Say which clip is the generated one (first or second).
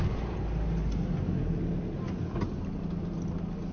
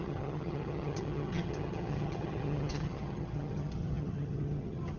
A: second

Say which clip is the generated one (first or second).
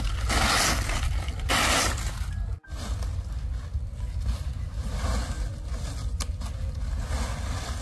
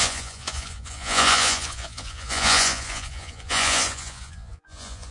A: second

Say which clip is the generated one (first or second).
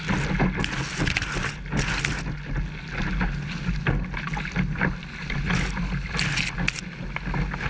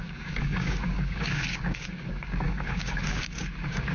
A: second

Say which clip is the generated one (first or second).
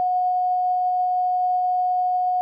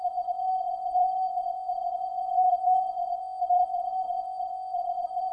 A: second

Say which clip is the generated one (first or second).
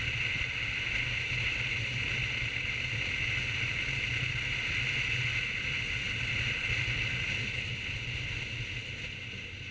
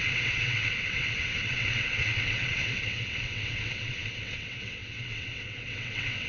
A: second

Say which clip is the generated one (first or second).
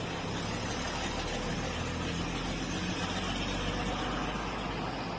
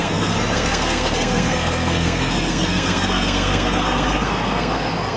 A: second